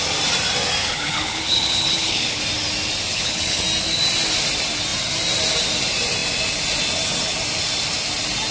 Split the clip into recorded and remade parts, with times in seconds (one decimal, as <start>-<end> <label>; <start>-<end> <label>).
0.0-0.8 recorded; 0.8-2.4 remade; 2.4-3.1 recorded; 3.1-3.6 remade; 3.6-8.5 recorded